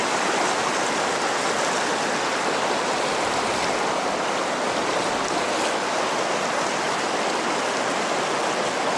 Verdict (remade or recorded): recorded